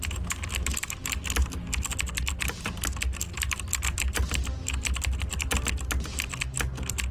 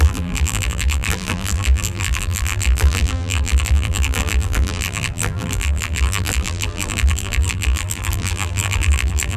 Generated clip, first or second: second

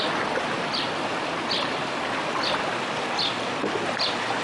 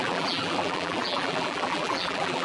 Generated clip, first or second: second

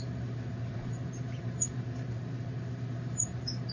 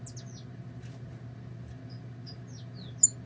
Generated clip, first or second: first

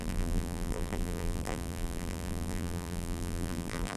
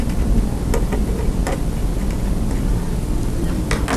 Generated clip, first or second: first